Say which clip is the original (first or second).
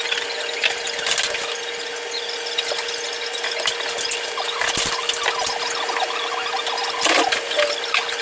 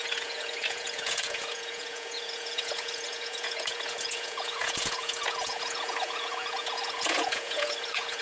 first